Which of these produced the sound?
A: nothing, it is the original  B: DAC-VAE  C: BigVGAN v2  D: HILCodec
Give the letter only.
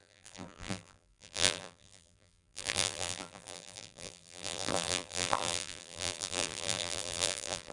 C